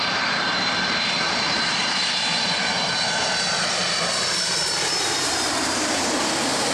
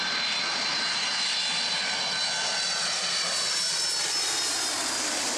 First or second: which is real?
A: second